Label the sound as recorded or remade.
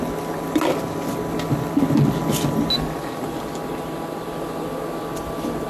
recorded